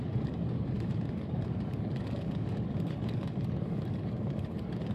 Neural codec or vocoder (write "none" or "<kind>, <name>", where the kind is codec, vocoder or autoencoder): codec, DAC